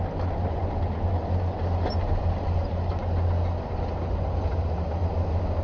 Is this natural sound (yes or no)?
yes